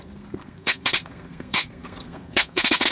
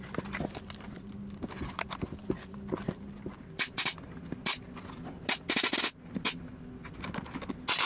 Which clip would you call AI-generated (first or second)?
first